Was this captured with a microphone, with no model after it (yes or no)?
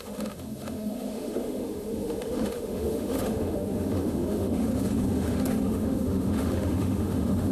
no